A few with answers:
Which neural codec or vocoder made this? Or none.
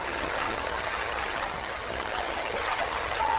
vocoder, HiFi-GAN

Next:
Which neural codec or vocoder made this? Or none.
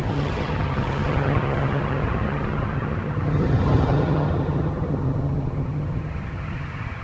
vocoder, HiFi-GAN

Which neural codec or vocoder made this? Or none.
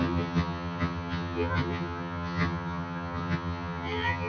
vocoder, HiFi-GAN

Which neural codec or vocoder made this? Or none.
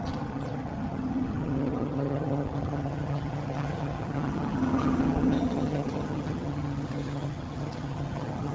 vocoder, HiFi-GAN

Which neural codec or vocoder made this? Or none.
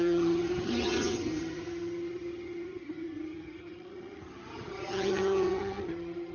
vocoder, HiFi-GAN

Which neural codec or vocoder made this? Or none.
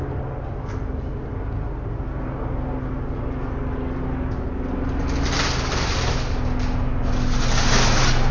none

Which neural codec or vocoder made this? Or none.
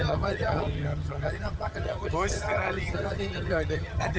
vocoder, HiFi-GAN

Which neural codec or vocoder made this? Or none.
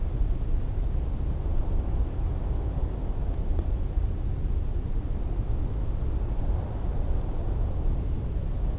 none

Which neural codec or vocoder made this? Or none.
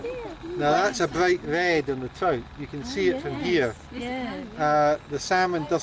none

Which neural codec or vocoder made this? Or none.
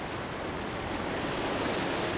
none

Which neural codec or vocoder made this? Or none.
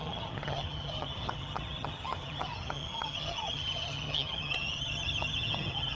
vocoder, HiFi-GAN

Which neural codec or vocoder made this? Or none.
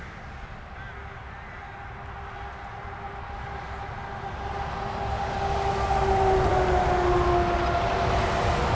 none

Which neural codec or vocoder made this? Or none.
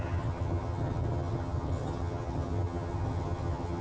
vocoder, HiFi-GAN